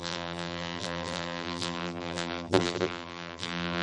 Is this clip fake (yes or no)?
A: yes